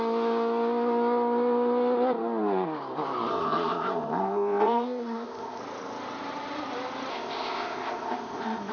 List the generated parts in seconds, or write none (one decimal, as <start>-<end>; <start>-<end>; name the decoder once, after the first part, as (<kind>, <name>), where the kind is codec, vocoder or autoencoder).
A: 3.3-5.6 (codec, ZipCodec); 7.1-8.7